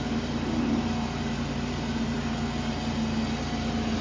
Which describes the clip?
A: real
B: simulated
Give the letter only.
A